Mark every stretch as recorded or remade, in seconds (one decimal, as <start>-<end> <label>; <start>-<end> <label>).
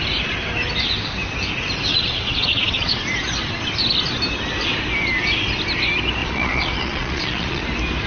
0.0-1.9 recorded; 1.9-3.0 remade; 3.0-6.2 recorded; 6.2-7.6 remade; 7.6-8.1 recorded